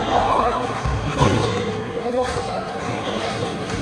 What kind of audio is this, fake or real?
fake